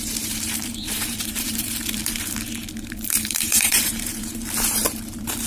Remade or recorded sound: remade